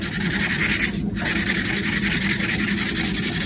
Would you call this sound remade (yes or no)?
yes